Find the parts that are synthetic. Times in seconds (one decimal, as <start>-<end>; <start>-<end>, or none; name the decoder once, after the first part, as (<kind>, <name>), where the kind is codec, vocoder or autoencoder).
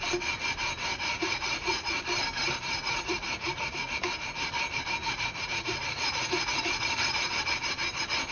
0.9-2.0 (vocoder, Vocos); 2.7-4.1; 5.0-7.4